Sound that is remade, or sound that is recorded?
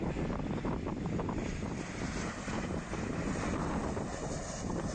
recorded